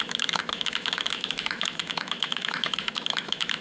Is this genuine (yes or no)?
no